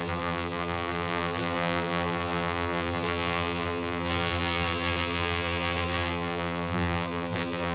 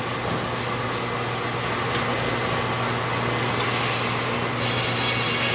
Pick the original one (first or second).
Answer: second